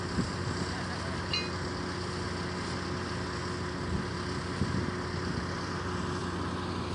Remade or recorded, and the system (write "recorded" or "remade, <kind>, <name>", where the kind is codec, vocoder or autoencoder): recorded